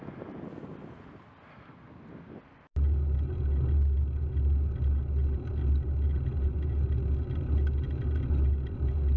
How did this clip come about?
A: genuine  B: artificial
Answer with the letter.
A